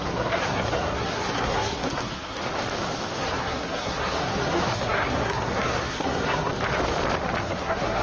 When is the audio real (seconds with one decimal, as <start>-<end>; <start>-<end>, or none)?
2.4-3.2; 6.5-7.4